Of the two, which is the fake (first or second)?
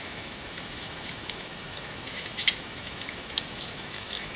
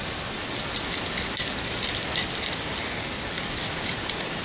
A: first